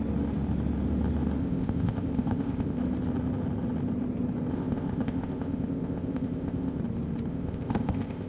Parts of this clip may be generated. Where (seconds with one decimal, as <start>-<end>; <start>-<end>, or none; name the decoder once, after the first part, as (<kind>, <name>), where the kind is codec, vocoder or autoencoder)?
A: 1.4-2.8 (codec, ZipCodec); 4.5-6.8; 7.3-8.3